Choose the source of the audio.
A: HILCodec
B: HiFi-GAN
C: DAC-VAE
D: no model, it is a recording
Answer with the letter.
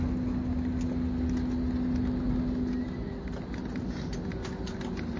D